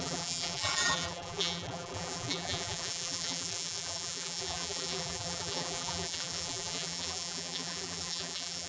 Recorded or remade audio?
remade